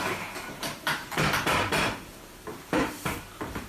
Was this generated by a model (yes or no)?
yes